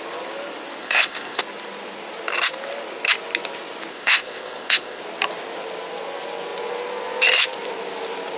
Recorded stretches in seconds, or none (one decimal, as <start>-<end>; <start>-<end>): 0.0-0.8; 1.4-3.9; 5.0-8.4